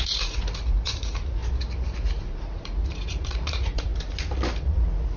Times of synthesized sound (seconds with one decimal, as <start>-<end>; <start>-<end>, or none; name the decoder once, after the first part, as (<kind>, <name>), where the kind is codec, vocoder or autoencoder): 0.0-1.4 (vocoder, Vocos); 2.2-3.9; 4.6-5.2